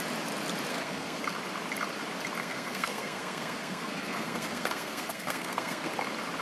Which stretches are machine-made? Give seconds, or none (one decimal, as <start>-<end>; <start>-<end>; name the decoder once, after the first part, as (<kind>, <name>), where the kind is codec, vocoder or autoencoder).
0.7-1.2 (codec, SNAC); 2.4-5.9